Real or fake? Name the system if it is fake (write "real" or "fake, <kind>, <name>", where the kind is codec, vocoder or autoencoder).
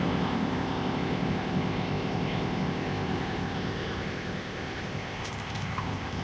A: fake, codec, ZipCodec